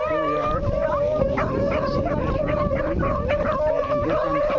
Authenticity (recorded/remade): remade